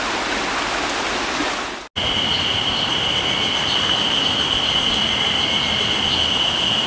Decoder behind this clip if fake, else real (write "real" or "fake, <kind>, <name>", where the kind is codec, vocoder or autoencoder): real